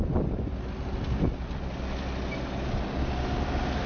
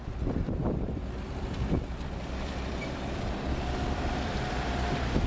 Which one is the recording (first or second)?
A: first